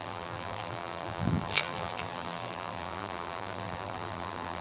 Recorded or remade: remade